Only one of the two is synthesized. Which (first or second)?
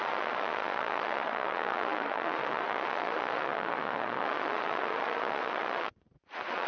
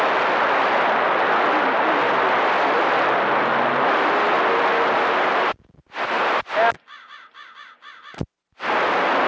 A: first